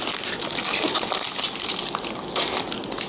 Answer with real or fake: real